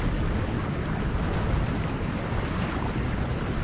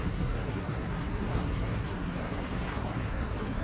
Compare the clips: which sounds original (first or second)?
first